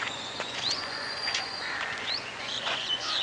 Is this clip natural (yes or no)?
no